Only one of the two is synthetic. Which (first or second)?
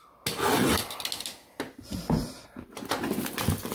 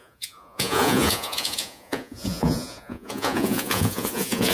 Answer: second